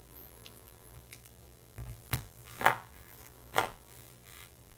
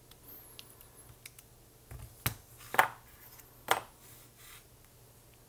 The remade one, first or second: first